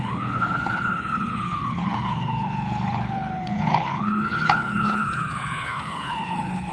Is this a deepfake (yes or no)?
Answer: yes